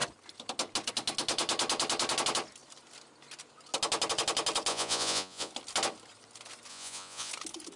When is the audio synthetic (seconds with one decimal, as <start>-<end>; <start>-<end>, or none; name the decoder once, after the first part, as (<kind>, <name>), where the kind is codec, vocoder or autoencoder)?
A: 4.7-5.5 (vocoder, Vocos); 6.7-7.3